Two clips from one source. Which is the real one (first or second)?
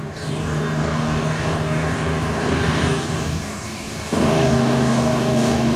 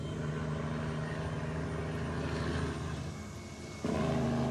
second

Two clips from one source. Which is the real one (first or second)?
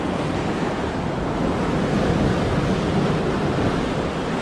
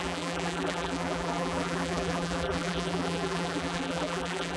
first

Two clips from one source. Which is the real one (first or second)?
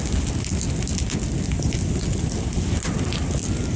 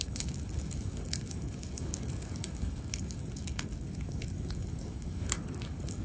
first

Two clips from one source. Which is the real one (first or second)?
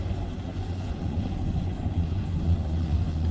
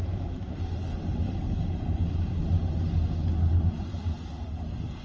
second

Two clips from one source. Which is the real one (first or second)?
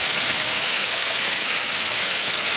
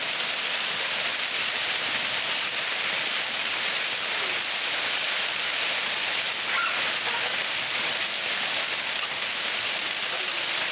second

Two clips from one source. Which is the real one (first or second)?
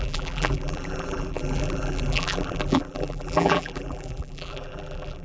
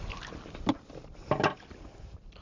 second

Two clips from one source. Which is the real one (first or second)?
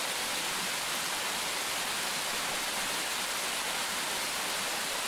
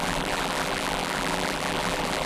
first